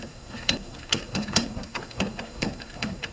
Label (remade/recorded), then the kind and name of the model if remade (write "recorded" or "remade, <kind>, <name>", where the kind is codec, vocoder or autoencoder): remade, codec, SNAC